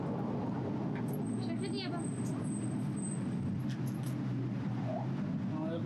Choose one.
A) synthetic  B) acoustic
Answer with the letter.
B